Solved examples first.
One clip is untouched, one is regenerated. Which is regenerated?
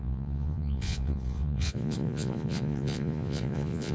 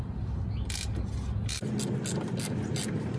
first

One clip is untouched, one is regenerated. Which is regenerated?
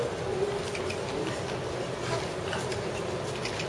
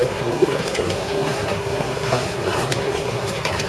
second